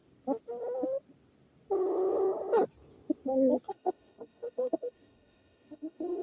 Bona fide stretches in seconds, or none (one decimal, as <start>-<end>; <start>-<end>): 0.0-3.7